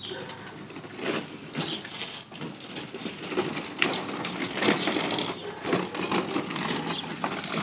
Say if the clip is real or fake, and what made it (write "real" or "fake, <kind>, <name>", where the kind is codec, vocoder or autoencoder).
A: real